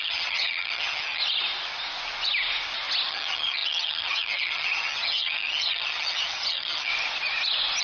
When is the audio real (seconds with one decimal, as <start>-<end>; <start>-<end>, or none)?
1.2-3.1; 6.9-7.8